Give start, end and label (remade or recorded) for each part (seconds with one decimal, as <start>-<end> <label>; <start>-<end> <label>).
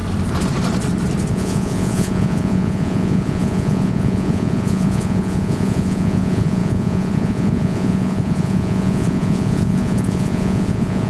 0.0-1.3 recorded; 1.3-11.1 remade